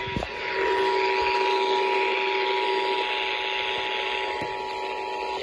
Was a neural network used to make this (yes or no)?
no